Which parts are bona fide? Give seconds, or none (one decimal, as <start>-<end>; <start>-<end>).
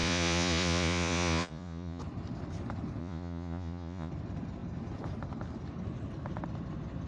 2.0-3.0; 4.1-7.1